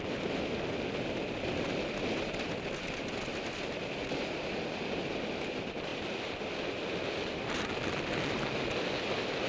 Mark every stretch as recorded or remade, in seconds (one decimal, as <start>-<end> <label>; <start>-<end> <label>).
0.0-9.5 recorded